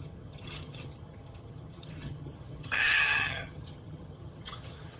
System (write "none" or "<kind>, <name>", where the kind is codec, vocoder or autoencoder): vocoder, HiFi-GAN